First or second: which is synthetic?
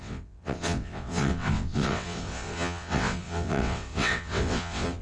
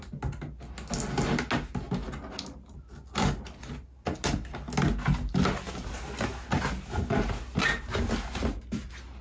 first